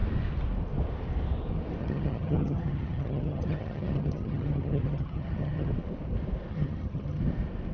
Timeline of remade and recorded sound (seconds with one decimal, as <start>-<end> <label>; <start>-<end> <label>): 0.0-1.8 recorded; 1.8-5.7 remade; 5.7-6.5 recorded; 6.5-7.2 remade; 7.2-7.7 recorded